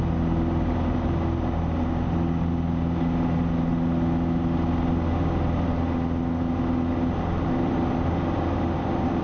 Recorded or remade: recorded